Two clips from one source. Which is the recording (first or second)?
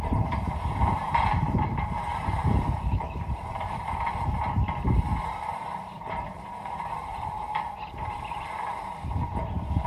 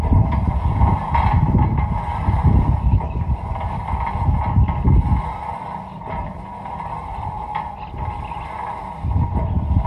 second